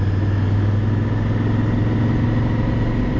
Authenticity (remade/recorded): recorded